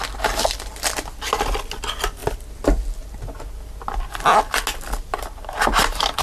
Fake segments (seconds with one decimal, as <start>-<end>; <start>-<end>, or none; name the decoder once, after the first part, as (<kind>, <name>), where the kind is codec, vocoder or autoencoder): none